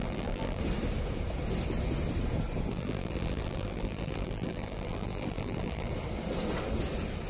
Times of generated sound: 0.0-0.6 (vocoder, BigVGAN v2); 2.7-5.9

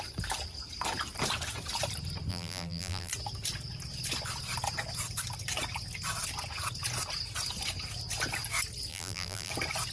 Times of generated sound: 2.3-3.1 (vocoder, BigVGAN v2); 8.9-9.5